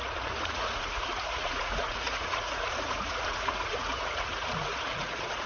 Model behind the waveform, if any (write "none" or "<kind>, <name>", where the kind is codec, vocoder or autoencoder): vocoder, Vocos